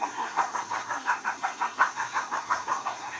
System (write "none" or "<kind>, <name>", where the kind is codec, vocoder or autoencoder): codec, SNAC